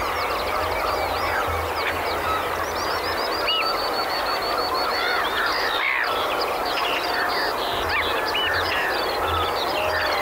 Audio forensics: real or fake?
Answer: real